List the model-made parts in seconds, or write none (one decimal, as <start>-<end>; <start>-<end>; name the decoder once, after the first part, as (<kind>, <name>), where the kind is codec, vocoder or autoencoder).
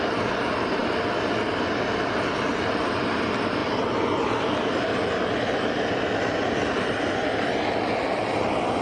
none